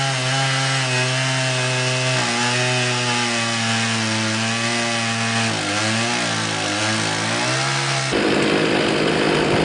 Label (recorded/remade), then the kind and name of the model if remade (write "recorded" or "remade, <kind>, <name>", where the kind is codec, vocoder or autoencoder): recorded